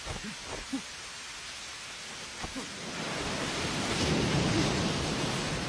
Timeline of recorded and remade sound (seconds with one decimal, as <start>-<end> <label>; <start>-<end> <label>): 0.0-1.7 remade; 1.7-5.1 recorded; 5.1-5.7 remade